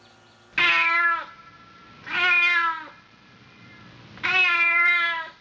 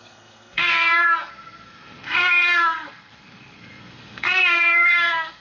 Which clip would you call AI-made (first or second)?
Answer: second